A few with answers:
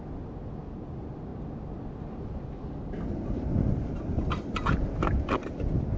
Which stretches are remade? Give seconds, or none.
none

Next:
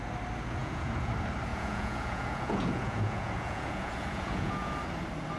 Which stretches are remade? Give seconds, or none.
0.6-1.1 (vocoder, Vocos); 1.5-4.7

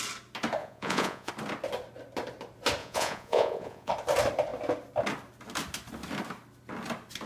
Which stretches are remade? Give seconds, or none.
0.6-1.3 (vocoder, Vocos); 2.8-3.9

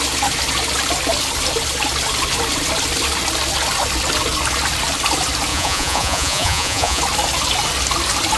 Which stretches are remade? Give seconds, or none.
5.5-7.0 (vocoder, Vocos)

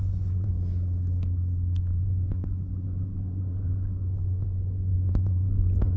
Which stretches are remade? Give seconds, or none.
0.0-0.5 (vocoder, Vocos); 2.0-6.0